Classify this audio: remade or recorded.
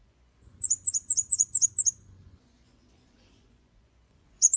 remade